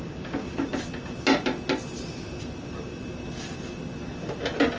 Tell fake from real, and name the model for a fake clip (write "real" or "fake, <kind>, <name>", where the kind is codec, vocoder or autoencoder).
real